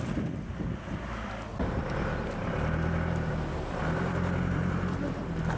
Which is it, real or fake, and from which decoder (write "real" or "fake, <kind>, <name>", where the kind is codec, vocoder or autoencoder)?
fake, vocoder, BigVGAN v2